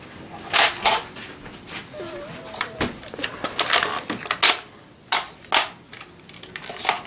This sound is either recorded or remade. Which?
recorded